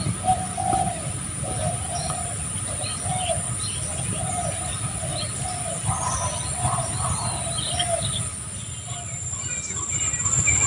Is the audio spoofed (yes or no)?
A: no